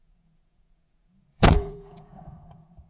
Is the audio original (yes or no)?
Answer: no